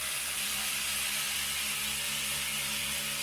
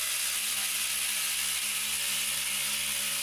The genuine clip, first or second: second